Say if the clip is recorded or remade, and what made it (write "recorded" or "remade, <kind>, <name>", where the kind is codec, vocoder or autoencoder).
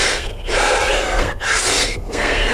remade, codec, SNAC